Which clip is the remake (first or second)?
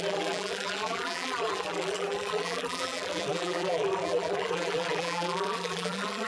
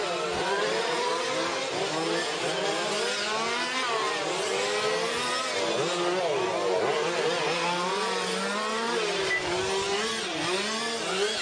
first